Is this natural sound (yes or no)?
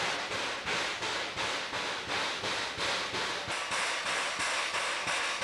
yes